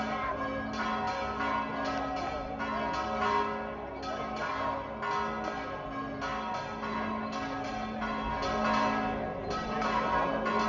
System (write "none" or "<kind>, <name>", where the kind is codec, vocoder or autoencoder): none